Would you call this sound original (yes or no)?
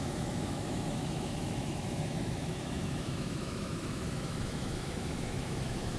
no